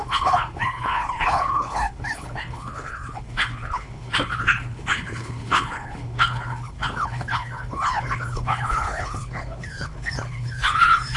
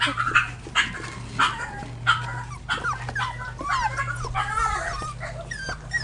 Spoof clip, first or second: first